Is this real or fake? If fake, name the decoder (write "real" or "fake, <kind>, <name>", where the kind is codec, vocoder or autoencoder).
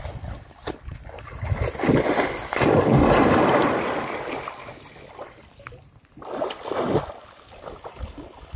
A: real